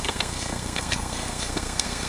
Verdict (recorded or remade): remade